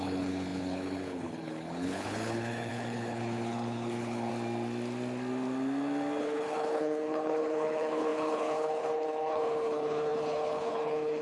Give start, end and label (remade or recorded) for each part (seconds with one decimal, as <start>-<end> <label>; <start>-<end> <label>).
0.0-4.3 remade; 4.3-6.2 recorded; 6.2-11.2 remade